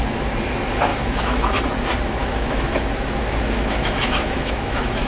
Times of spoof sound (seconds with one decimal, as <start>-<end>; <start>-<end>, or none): 0.9-1.6; 2.2-5.1